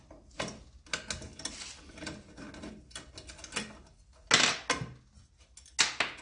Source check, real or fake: real